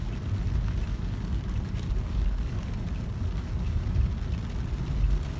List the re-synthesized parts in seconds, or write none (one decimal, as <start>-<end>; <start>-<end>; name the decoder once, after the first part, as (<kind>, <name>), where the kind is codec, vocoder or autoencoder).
0.9-4.1 (codec, DAC)